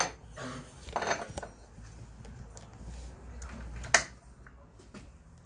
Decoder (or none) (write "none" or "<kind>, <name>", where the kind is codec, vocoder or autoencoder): none